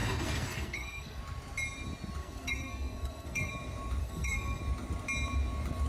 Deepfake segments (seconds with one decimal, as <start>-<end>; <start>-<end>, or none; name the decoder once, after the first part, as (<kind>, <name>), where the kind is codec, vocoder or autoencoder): 0.0-1.2 (codec, SNAC); 2.2-3.5; 4.0-4.6